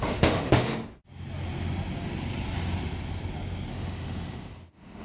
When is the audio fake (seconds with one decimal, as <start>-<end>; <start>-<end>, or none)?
0.0-0.7; 3.7-5.0